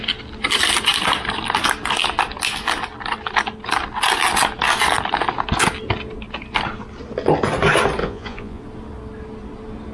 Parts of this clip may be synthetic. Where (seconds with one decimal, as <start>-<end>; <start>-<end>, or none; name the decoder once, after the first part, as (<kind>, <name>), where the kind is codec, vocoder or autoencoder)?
8.0-8.6 (vocoder, Vocos)